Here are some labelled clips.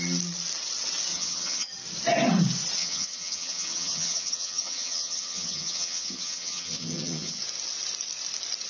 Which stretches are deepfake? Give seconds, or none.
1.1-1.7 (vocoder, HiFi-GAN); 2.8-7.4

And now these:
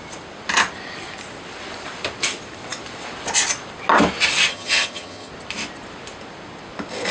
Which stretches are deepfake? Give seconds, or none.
4.5-5.3 (vocoder, HiFi-GAN)

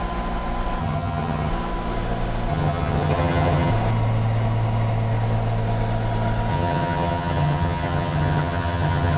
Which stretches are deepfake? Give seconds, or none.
0.8-1.5 (vocoder, HiFi-GAN); 2.5-3.7; 6.5-9.2

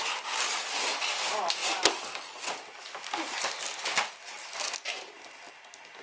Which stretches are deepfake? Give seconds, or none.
none

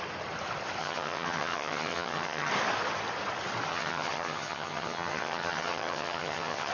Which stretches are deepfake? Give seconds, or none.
0.8-2.5 (vocoder, HiFi-GAN); 3.7-6.7

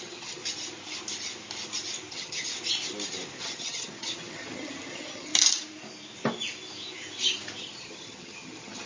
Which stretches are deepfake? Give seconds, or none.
0.0-0.4 (vocoder, HiFi-GAN); 2.1-2.5; 3.4-5.3; 7.6-8.9